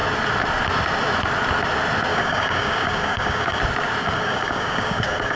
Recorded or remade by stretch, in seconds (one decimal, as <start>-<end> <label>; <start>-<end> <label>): 0.0-2.1 recorded; 2.1-3.6 remade; 3.6-4.0 recorded; 4.0-5.4 remade